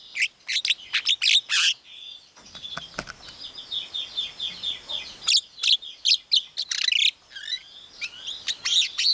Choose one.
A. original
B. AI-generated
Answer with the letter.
A